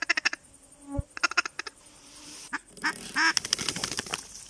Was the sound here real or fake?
real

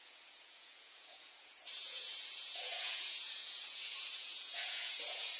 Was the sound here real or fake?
fake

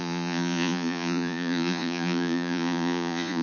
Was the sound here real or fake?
fake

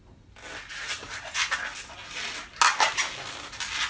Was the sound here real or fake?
real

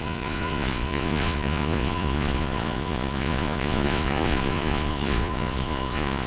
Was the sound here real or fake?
fake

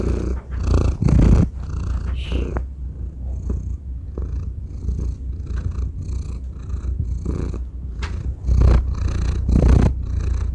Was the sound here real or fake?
real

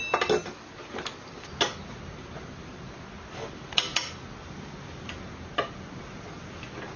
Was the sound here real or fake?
real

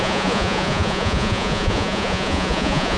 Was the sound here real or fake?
fake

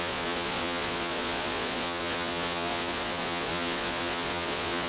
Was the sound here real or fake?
fake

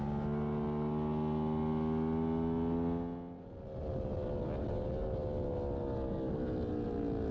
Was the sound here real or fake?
real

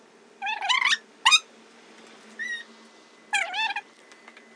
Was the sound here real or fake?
real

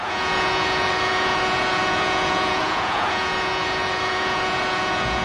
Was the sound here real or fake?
fake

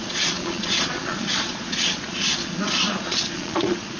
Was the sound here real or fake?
fake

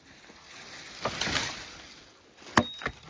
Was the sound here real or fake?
real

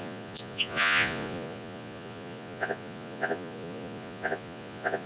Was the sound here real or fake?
fake